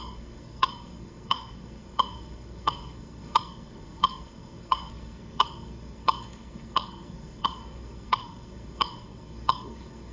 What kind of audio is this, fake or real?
fake